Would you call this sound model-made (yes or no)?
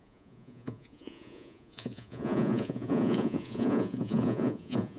yes